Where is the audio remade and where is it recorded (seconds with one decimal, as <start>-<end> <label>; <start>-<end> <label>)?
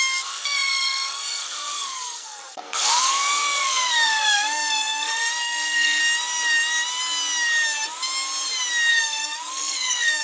0.0-6.0 remade; 6.0-8.9 recorded; 8.9-10.2 remade